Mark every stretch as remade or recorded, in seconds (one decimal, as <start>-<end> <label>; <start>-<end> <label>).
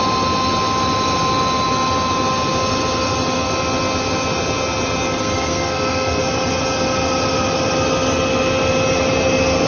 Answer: 0.0-5.1 recorded; 5.1-6.2 remade; 6.2-9.7 recorded